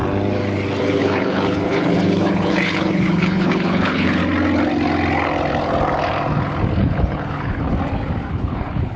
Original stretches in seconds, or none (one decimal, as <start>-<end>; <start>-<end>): 0.0-0.8; 4.2-6.8; 7.7-8.3